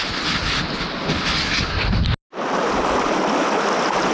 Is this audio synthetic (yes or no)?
no